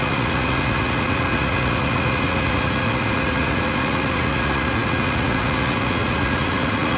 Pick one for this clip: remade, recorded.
remade